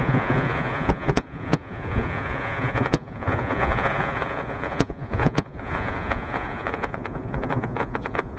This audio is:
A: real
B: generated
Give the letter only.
B